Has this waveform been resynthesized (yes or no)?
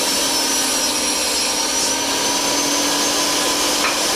no